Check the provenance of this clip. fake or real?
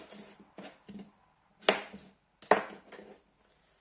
real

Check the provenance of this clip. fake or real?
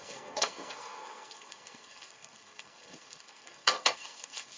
fake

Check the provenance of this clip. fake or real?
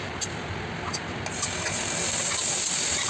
real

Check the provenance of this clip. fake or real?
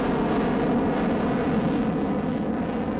real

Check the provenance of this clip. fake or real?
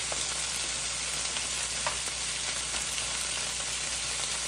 real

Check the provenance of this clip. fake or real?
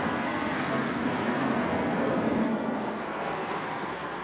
fake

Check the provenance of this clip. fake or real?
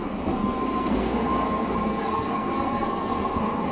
fake